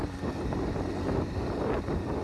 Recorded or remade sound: recorded